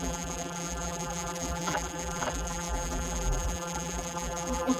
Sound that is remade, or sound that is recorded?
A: remade